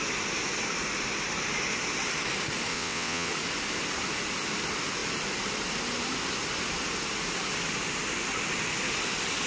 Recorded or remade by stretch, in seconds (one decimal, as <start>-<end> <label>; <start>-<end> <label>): 0.0-2.7 recorded; 2.7-3.3 remade; 3.3-9.5 recorded